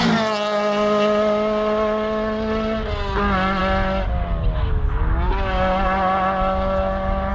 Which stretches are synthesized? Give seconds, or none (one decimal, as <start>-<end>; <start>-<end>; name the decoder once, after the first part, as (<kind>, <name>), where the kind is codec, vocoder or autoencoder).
none